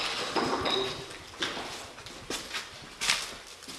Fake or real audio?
real